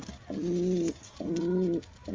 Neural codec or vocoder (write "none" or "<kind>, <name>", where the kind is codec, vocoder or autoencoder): none